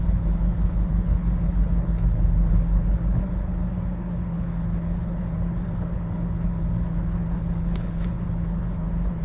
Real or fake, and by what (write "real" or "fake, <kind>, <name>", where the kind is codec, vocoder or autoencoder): fake, codec, HILCodec